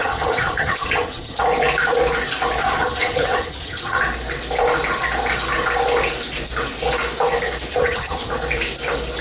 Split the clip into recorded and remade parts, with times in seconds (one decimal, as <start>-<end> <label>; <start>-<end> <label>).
0.0-1.4 remade; 1.4-2.6 recorded; 2.6-4.0 remade; 4.0-7.7 recorded; 7.7-8.3 remade; 8.3-9.2 recorded